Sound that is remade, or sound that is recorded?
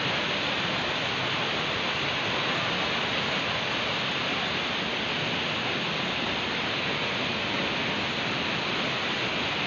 recorded